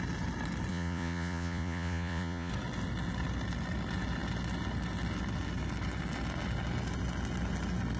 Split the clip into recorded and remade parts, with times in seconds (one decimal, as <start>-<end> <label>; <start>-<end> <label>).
0.0-0.7 recorded; 0.7-2.5 remade; 2.5-8.0 recorded